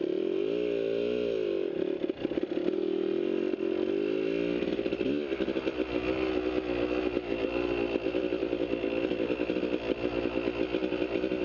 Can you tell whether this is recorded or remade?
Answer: recorded